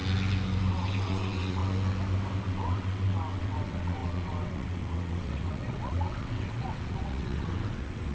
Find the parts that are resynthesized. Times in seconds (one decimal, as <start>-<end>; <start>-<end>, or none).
0.7-1.6; 2.4-8.1